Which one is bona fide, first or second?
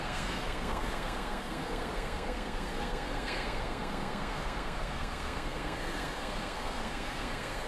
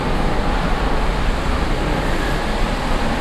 second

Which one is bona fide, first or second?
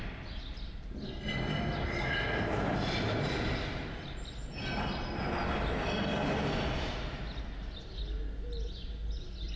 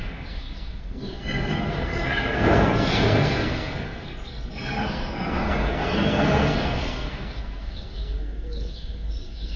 first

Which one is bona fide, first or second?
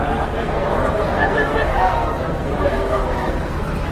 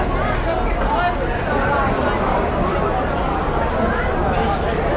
second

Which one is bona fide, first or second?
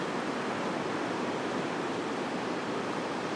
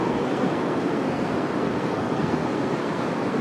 first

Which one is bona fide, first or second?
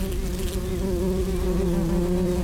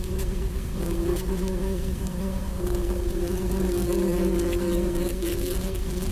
first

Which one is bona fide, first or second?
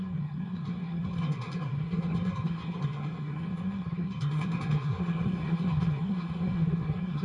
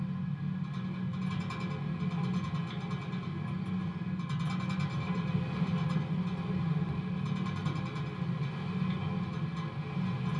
second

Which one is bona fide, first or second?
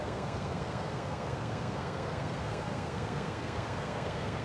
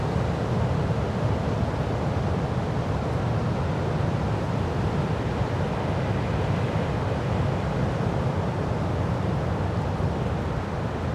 second